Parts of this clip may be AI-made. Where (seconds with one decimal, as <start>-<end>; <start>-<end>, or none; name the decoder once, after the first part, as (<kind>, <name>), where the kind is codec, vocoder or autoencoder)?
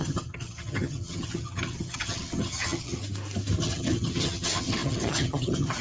0.0-3.0 (vocoder, HiFi-GAN); 3.6-5.8